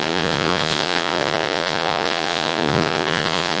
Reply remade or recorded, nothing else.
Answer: remade